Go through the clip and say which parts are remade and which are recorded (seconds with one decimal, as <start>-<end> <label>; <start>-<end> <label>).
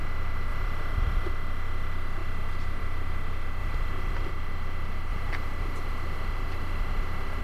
0.0-0.5 recorded; 0.5-1.3 remade; 1.3-3.6 recorded; 3.6-4.3 remade; 4.3-5.1 recorded; 5.1-7.4 remade